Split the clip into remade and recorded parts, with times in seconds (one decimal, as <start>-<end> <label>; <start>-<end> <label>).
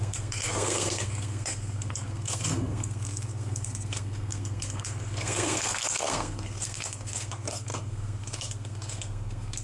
0.0-9.6 remade